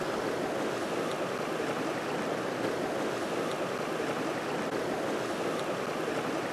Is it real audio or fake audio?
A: real